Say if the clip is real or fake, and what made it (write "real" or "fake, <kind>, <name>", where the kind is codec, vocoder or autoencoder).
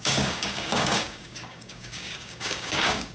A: fake, codec, DAC